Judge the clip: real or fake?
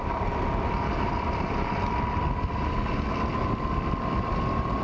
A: real